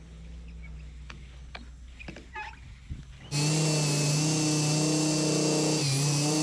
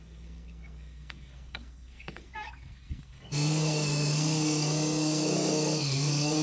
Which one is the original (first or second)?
first